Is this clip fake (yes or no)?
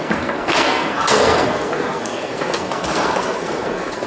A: yes